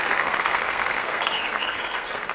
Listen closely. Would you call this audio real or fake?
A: fake